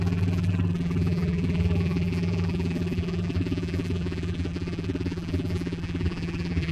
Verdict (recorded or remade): remade